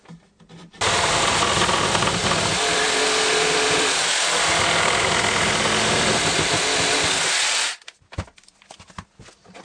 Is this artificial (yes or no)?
no